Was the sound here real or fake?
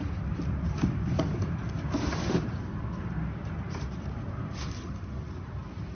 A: real